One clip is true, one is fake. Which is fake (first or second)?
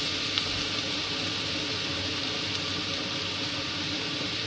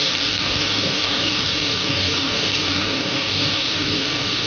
second